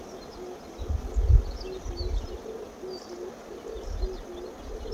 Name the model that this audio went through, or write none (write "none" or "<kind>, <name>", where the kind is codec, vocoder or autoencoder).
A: none